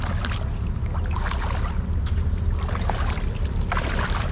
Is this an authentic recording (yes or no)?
yes